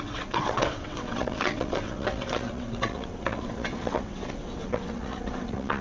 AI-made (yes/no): yes